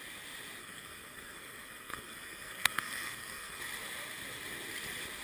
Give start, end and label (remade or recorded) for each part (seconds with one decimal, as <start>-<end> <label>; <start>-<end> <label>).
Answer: 0.0-0.6 recorded; 0.6-3.6 remade; 3.6-5.2 recorded